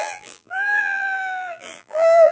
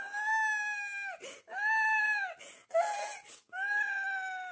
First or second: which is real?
second